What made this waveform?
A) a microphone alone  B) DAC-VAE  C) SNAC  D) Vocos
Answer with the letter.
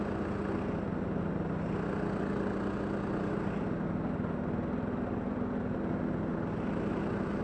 A